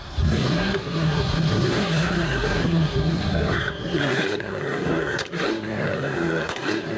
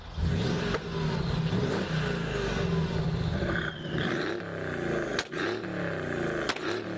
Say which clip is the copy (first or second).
first